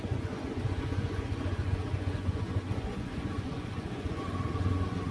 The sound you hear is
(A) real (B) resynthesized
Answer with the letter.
B